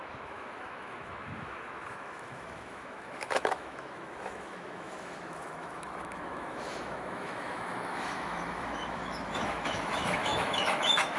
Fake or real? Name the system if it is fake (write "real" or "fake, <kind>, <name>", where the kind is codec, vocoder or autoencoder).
fake, autoencoder, DAC-VAE